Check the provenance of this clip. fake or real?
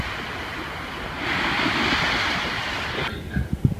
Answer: real